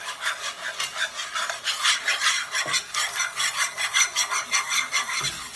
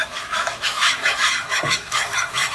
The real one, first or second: first